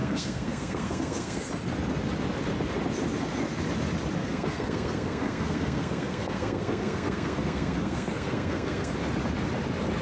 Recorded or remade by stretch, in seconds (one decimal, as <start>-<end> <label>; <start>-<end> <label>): 0.0-1.5 remade; 1.5-4.2 recorded; 4.2-8.9 remade; 8.9-10.0 recorded